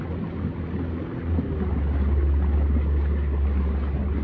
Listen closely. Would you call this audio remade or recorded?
recorded